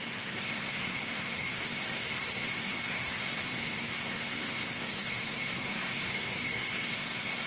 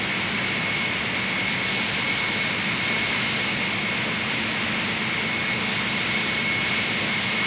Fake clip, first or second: first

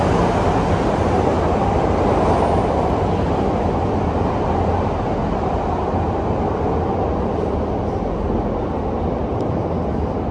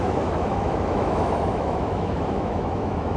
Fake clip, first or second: second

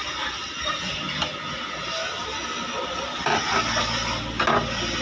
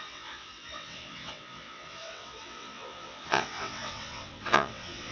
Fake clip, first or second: second